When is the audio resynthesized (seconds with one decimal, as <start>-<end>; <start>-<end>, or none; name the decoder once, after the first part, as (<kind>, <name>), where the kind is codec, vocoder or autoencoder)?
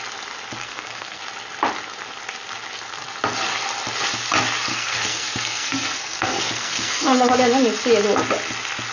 0.6-1.2 (codec, SNAC); 4.7-7.3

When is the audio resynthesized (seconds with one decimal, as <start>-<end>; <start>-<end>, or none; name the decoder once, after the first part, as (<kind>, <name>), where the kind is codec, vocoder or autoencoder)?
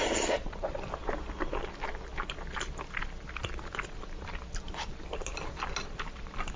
none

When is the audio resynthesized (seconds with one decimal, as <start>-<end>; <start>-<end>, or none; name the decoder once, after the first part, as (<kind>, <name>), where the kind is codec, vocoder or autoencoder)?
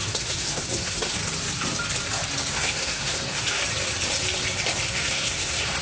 0.0-1.2 (codec, SNAC); 2.5-3.6; 4.9-5.8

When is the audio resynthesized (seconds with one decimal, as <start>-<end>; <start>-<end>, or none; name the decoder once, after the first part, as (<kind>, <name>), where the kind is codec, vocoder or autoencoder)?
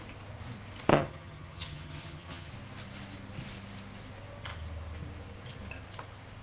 0.9-2.5 (vocoder, HiFi-GAN)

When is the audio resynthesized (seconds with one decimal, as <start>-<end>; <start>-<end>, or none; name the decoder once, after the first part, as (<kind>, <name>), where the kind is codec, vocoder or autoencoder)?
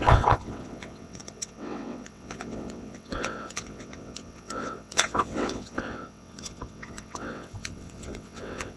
0.0-8.8 (vocoder, WaveNeXt)